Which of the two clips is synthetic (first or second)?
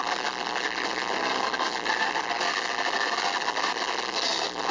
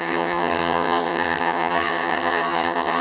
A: second